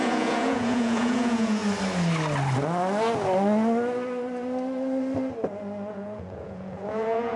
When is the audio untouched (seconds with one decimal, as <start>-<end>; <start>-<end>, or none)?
1.6-5.9